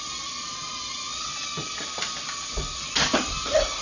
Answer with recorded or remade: recorded